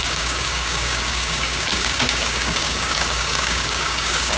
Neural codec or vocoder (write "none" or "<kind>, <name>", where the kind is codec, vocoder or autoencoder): codec, DAC